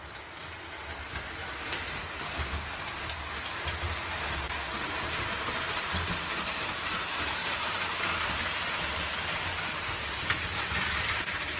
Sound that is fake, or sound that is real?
fake